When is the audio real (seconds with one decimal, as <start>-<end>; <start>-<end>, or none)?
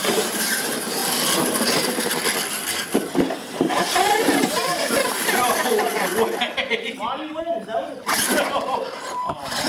1.0-1.8; 2.2-4.5